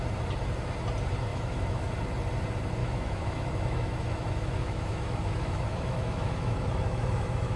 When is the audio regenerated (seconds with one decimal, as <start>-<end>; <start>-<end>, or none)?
1.3-1.9; 2.8-7.6